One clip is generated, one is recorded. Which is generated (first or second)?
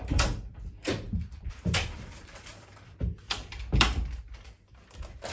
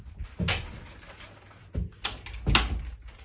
first